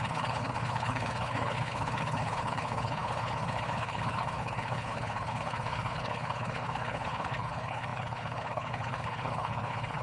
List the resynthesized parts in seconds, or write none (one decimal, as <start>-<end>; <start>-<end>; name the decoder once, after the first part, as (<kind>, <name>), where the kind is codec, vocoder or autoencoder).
0.0-10.0 (codec, HILCodec)